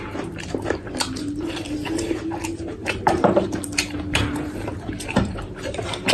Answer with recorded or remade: remade